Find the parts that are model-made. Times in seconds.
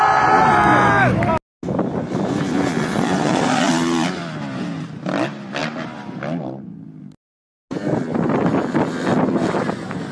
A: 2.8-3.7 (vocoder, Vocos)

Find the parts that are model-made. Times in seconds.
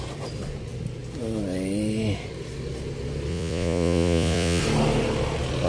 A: 3.3-4.6 (vocoder, Vocos)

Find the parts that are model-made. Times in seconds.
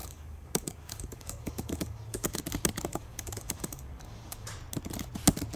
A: 0.0-2.4 (codec, DAC); 2.9-4.5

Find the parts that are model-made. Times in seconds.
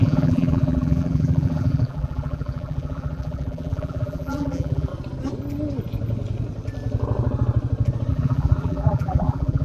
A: 0.0-4.9 (vocoder, BigVGAN v2); 8.1-9.6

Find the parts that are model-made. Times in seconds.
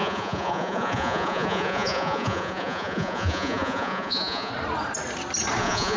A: 0.0-4.5 (vocoder, Vocos); 5.6-6.0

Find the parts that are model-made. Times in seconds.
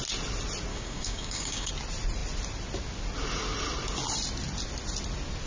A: 0.7-1.7 (codec, DAC)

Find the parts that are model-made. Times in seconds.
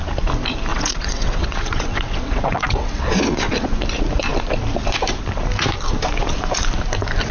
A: 0.7-3.0 (vocoder, WaveNeXt)